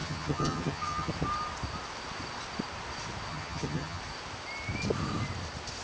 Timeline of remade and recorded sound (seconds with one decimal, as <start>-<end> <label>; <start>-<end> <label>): 0.0-1.1 remade; 1.1-3.3 recorded; 3.3-4.0 remade; 4.0-5.8 recorded